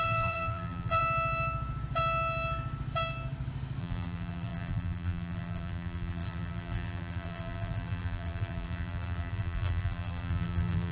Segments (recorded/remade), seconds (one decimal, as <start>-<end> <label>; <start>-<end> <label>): 0.0-1.0 remade; 1.0-3.8 recorded; 3.8-10.9 remade